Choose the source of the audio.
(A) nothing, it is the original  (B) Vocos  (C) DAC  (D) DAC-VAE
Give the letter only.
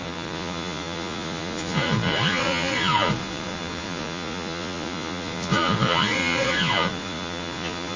B